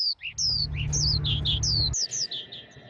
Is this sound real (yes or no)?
yes